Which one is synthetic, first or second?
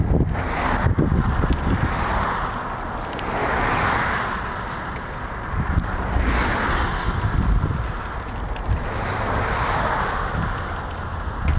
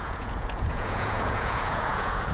second